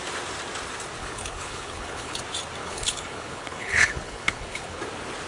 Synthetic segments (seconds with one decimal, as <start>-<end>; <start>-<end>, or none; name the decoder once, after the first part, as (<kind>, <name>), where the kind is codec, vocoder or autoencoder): 1.0-2.2 (codec, HILCodec); 2.6-4.8